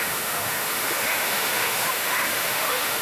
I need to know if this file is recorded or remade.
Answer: remade